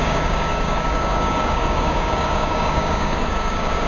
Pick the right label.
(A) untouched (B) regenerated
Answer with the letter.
B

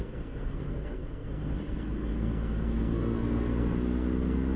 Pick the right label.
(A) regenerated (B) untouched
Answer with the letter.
A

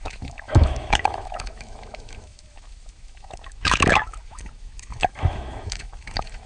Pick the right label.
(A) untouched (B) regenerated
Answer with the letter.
B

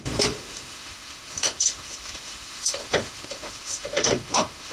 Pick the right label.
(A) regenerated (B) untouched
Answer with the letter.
A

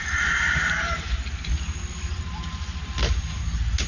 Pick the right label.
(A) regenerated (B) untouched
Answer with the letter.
B